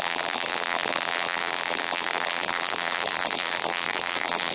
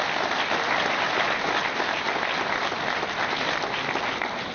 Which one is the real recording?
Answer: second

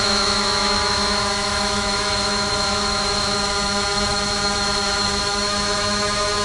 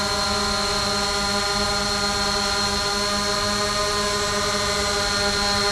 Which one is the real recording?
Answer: second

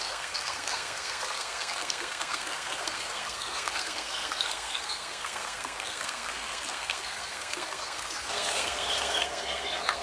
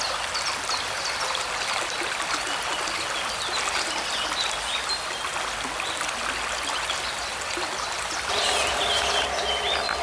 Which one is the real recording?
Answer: second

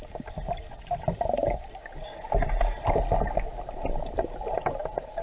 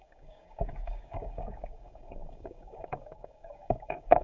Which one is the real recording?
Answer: first